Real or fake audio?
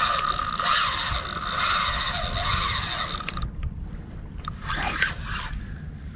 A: real